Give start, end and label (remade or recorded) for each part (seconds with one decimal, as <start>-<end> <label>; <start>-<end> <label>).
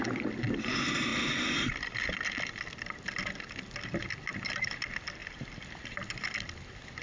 0.0-7.0 recorded